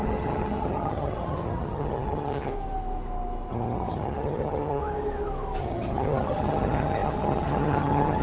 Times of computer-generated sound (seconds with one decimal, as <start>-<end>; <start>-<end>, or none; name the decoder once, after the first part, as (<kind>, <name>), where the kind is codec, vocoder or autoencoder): 0.0-2.5 (vocoder, HiFi-GAN); 3.5-4.8; 5.6-8.2